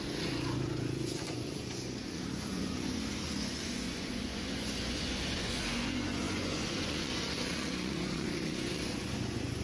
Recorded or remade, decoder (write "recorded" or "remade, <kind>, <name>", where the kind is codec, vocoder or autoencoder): remade, vocoder, Vocos